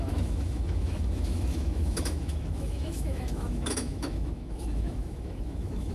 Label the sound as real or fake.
fake